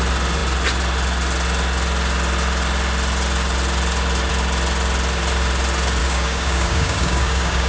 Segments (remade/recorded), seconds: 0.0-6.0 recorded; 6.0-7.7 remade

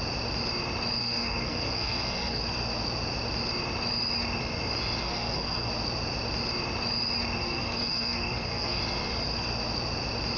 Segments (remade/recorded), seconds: 0.0-1.0 recorded; 1.0-2.4 remade; 2.4-5.0 recorded; 5.0-5.7 remade; 5.7-7.4 recorded; 7.4-8.8 remade; 8.8-10.4 recorded